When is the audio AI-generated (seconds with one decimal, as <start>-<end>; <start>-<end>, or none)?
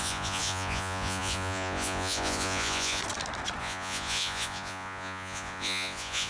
0.0-3.0; 3.6-6.3